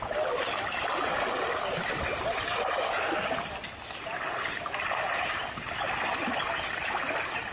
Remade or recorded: recorded